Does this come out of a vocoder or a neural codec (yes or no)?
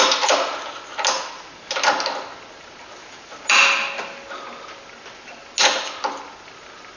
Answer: no